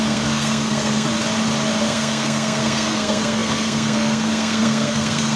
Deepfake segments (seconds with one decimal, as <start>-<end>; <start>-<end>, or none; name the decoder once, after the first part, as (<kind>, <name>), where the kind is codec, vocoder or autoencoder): 0.0-1.1 (codec, SNAC); 1.8-5.4